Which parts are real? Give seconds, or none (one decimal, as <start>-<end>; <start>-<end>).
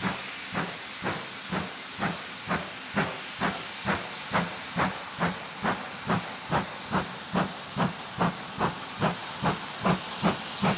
0.0-10.8